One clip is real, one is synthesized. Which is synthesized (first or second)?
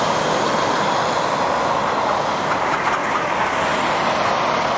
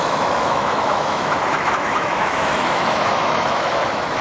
second